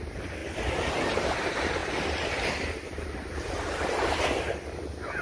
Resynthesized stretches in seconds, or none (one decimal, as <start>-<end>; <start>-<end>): 0.0-0.4; 0.9-5.2